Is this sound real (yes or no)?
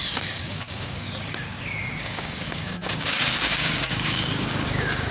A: no